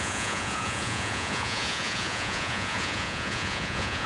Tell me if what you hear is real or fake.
fake